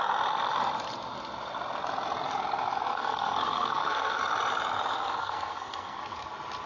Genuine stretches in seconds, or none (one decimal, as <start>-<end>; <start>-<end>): 0.0-2.9; 4.2-5.2; 6.0-6.7